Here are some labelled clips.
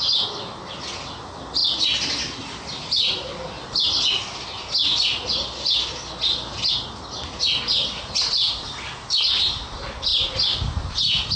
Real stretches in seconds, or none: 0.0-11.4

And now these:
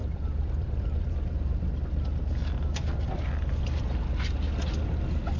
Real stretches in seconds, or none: 1.6-5.4

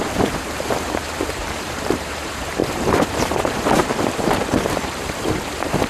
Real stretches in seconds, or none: none

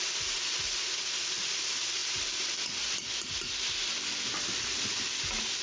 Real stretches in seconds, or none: 0.0-5.6

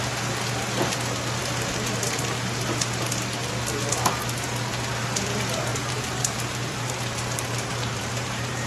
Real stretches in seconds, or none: 0.0-5.7